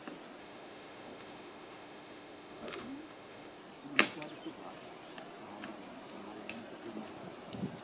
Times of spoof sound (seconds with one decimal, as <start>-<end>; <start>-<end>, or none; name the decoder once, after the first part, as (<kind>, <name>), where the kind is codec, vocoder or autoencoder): 0.4-3.6 (autoencoder, DAC-VAE)

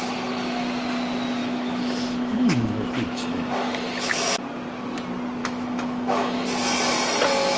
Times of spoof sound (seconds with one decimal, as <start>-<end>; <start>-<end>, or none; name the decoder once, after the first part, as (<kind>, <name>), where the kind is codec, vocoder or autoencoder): 1.4-4.3 (autoencoder, DAC-VAE); 5.4-6.4

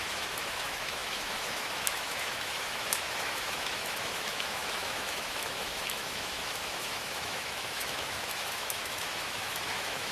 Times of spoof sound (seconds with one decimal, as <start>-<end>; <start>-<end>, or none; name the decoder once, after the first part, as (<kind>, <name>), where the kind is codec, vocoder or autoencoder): 0.0-10.1 (autoencoder, DAC-VAE)

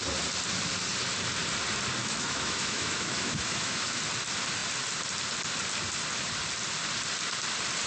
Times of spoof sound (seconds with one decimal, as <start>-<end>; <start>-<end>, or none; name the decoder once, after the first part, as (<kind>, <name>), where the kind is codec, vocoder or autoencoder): 2.0-4.0 (autoencoder, DAC-VAE)

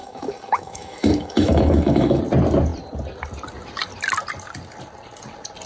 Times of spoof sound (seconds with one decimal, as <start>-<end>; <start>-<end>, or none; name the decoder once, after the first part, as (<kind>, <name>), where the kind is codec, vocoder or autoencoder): 0.0-2.2 (autoencoder, DAC-VAE)

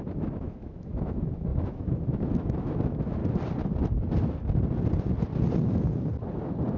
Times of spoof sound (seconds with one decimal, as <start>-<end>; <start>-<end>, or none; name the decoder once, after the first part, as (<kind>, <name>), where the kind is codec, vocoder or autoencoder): 0.0-3.2 (autoencoder, DAC-VAE)